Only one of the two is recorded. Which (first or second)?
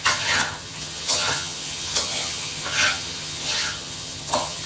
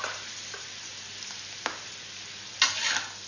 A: second